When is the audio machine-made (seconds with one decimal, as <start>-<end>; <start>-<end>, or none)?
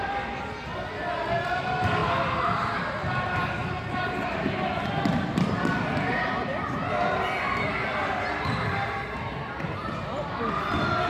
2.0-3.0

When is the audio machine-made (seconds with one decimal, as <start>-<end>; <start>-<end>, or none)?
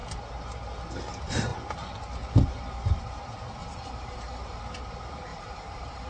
3.6-4.6; 5.3-6.1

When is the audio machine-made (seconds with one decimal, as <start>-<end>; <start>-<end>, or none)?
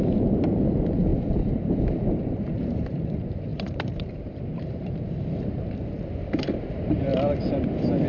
0.0-7.1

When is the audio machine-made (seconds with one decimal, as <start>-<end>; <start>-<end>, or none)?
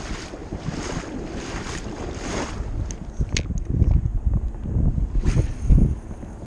0.4-2.9; 4.1-5.7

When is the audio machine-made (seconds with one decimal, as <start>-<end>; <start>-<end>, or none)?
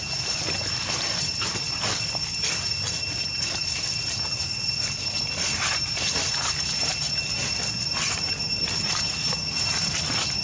5.5-6.9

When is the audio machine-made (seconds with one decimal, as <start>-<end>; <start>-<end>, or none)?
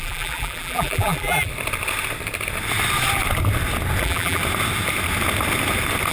0.0-1.5; 4.0-4.4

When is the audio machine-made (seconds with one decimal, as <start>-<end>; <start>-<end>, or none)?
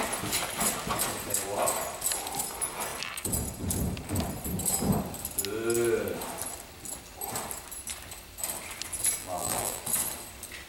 9.2-9.8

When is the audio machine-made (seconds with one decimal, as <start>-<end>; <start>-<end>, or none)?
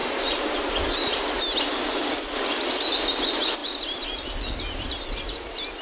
0.0-1.4